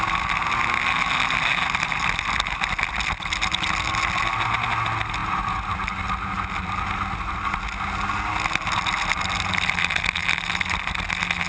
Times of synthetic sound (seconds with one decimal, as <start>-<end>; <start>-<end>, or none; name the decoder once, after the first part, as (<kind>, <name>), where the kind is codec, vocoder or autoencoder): none